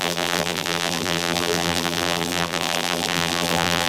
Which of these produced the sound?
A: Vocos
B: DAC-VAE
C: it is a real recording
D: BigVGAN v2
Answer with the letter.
D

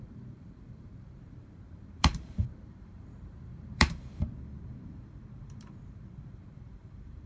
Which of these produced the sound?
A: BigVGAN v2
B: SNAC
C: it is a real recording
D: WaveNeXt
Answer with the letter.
A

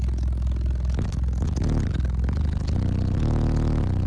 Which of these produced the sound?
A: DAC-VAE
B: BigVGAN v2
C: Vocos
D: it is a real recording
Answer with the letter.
D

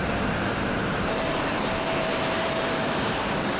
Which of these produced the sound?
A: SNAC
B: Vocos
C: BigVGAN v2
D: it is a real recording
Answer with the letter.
C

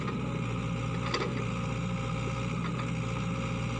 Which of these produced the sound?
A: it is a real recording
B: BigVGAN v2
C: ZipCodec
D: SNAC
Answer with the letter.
A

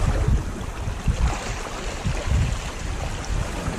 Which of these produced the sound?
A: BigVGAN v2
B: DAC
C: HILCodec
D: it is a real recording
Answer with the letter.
D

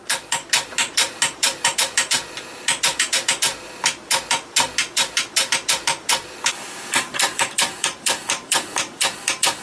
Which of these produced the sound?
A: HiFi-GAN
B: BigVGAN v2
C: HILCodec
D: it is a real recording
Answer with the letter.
B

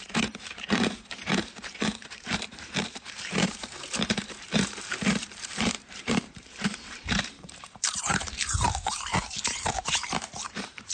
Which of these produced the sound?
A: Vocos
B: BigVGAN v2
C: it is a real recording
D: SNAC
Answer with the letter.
B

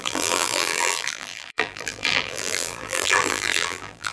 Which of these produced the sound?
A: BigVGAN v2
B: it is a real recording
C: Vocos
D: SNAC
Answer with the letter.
A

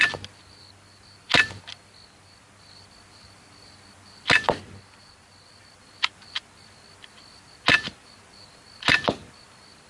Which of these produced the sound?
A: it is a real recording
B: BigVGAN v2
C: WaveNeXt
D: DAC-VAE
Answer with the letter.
A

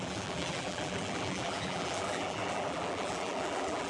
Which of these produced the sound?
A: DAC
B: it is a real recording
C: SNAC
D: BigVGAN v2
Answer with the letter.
D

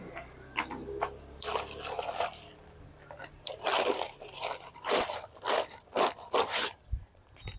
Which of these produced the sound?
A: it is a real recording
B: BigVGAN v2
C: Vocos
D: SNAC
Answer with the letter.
B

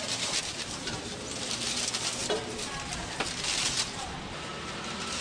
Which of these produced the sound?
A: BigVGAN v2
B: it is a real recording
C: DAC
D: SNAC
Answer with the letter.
A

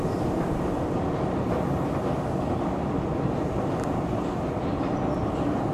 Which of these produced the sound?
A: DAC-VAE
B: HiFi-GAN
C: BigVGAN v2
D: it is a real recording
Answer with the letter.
D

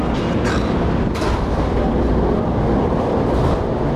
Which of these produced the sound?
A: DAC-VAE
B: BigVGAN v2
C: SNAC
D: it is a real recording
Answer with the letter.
D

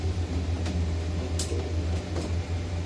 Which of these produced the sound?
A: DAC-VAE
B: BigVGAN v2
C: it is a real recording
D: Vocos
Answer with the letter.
C